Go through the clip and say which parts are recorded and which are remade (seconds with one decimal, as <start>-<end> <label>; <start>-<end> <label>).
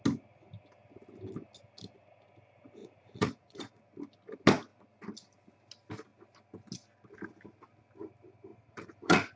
0.0-2.8 recorded; 2.8-3.8 remade; 3.8-8.5 recorded; 8.5-9.4 remade